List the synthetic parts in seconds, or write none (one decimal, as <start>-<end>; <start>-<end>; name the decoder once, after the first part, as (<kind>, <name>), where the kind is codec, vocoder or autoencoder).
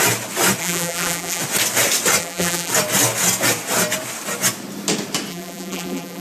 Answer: 0.6-1.4 (vocoder, BigVGAN v2); 2.2-2.7; 5.3-6.2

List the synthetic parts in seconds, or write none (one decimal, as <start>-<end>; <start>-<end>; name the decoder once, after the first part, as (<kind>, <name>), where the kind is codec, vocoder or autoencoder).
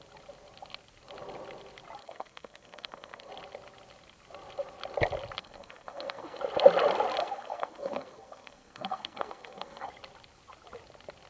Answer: 2.0-3.3 (codec, SNAC); 5.4-6.4; 7.2-9.9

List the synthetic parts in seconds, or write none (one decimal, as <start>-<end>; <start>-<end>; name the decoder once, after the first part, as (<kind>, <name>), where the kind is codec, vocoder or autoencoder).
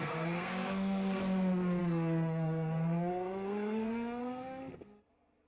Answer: 0.0-1.2 (codec, SNAC); 1.8-5.1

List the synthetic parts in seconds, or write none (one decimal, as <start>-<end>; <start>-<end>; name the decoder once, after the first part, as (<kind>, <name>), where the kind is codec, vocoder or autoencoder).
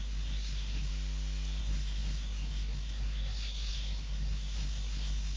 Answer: 0.0-0.9 (codec, SNAC); 1.6-5.4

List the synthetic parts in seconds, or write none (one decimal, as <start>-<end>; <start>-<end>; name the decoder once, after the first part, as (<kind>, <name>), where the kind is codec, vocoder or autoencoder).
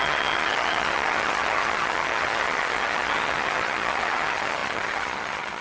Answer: 0.0-5.6 (vocoder, HiFi-GAN)